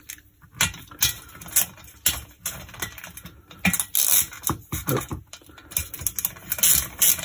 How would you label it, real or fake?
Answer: real